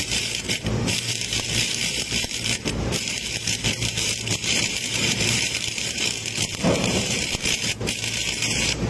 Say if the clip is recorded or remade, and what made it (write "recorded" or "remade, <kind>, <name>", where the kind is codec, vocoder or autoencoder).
remade, vocoder, BigVGAN v2